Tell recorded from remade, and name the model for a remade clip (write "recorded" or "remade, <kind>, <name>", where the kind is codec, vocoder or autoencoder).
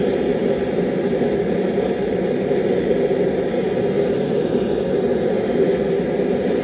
remade, vocoder, BigVGAN v2